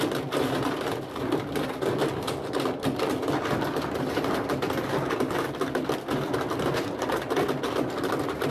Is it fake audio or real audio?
real